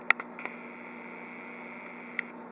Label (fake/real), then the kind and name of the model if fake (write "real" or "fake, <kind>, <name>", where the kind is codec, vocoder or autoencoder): real